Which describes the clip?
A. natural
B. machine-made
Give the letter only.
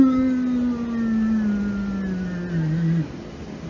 A